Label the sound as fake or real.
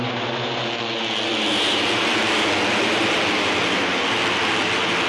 real